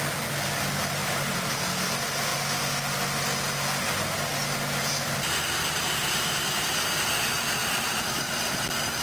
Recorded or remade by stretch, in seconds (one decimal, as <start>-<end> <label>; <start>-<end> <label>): 0.0-1.0 recorded; 1.0-1.5 remade; 1.5-6.0 recorded; 6.0-6.5 remade; 6.5-7.6 recorded; 7.6-8.6 remade; 8.6-9.0 recorded